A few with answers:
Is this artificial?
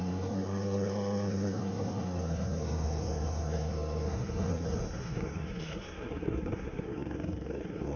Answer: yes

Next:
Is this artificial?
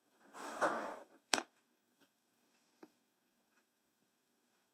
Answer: yes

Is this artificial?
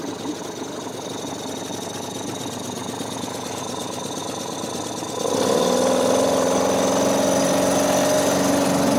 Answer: no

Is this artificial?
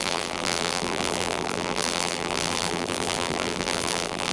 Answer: yes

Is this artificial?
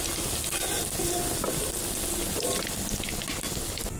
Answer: no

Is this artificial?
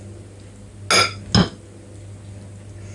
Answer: no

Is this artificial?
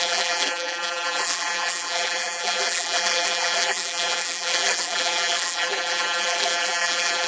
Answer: yes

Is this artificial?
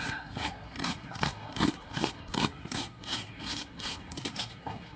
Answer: yes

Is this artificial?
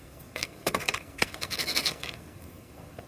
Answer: yes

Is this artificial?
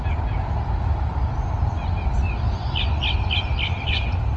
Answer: no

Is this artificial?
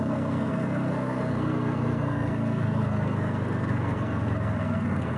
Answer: yes